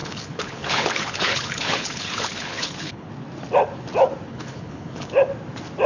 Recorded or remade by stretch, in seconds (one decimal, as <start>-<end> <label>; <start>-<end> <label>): 0.0-3.1 remade; 3.1-4.3 recorded; 4.3-5.1 remade; 5.1-5.9 recorded